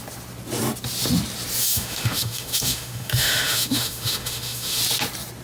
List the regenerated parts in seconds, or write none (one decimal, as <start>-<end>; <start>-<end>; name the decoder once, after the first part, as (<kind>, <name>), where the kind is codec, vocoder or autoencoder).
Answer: 1.6-4.8 (autoencoder, DAC-VAE)